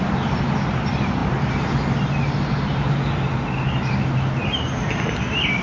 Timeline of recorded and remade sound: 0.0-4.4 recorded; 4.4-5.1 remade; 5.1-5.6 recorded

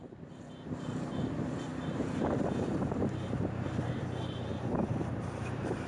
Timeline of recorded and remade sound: 0.0-1.7 recorded; 1.7-4.0 remade; 4.0-4.5 recorded; 4.5-5.9 remade

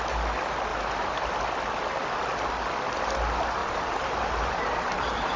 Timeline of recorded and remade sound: 0.0-0.7 recorded; 0.7-1.3 remade; 1.3-3.6 recorded; 3.6-5.4 remade

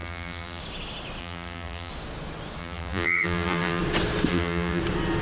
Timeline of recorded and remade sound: 0.0-0.6 remade; 0.6-1.2 recorded; 1.2-1.9 remade; 1.9-2.6 recorded; 2.6-3.8 remade; 3.8-4.3 recorded; 4.3-4.8 remade; 4.8-5.2 recorded

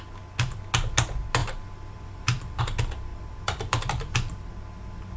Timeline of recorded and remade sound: 0.0-1.4 recorded; 1.4-2.6 remade; 2.6-3.1 recorded; 3.1-4.5 remade; 4.5-5.2 recorded

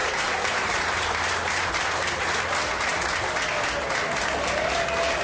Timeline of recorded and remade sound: 0.0-1.7 remade; 1.7-5.2 recorded